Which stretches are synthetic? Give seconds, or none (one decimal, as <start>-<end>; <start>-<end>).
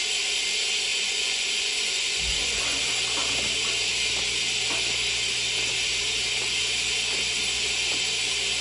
0.9-2.8